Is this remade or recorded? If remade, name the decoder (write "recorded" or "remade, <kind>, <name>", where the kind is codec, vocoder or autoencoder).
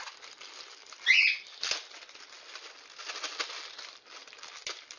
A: recorded